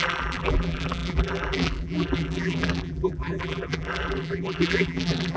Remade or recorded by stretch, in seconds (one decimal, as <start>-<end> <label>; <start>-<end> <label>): 0.0-5.4 remade